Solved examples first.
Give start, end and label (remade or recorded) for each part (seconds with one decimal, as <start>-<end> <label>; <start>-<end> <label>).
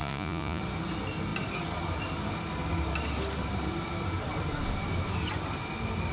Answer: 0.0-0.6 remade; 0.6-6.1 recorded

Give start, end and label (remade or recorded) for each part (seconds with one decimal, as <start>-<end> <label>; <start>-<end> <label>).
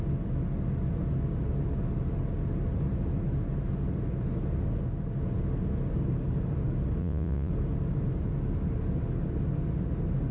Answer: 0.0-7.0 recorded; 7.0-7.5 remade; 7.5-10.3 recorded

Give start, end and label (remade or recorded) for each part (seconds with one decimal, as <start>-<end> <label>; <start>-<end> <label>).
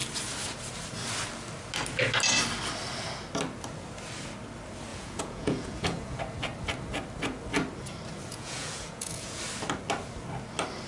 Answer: 0.0-4.9 recorded; 4.9-6.2 remade; 6.2-8.3 recorded; 8.3-9.4 remade; 9.4-10.9 recorded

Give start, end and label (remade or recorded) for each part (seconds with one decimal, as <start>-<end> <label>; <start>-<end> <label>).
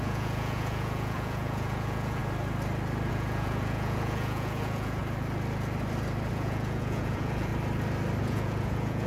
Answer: 0.0-2.2 remade; 2.2-3.1 recorded; 3.1-5.0 remade; 5.0-6.3 recorded; 6.3-7.5 remade; 7.5-8.2 recorded; 8.2-9.1 remade